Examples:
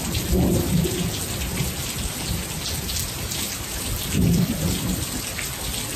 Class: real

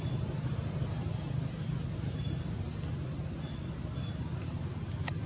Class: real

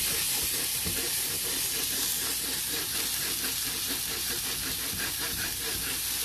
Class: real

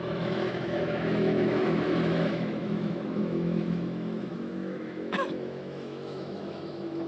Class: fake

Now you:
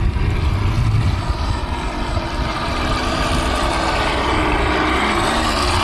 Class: real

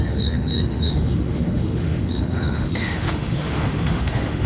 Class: fake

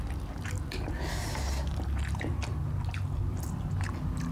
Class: real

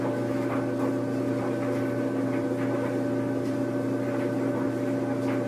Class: real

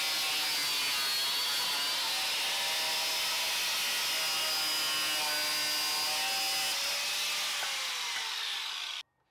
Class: real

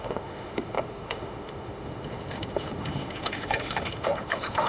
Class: fake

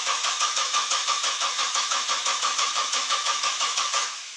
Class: fake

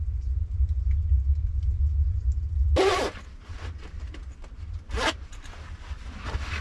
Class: real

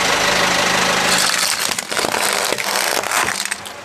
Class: real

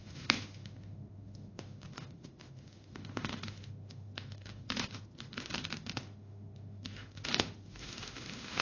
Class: fake